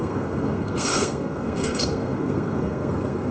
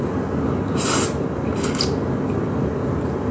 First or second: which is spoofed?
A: first